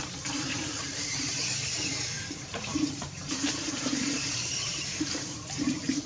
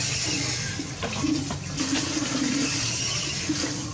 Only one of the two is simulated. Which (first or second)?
first